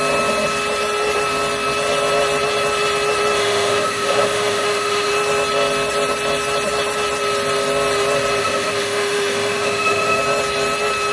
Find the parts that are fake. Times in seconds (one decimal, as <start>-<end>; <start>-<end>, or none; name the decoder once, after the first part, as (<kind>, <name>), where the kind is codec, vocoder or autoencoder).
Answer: 3.4-5.1 (autoencoder, DAC-VAE); 8.4-10.2